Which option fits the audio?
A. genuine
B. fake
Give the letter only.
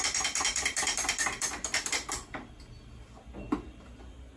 A